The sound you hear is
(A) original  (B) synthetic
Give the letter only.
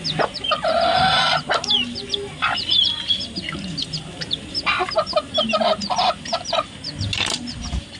A